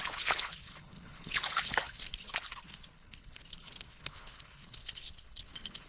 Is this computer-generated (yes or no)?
yes